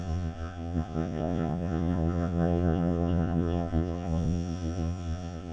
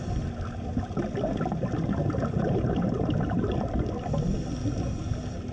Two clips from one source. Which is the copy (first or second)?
first